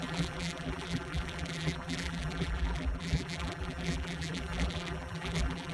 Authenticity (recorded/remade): remade